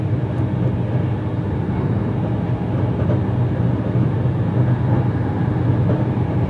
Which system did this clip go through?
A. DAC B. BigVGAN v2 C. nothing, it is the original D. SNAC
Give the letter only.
C